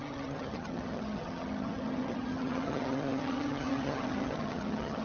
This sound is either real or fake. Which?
fake